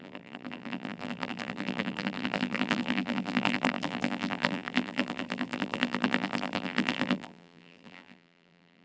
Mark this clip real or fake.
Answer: fake